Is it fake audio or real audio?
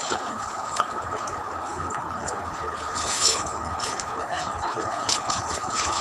fake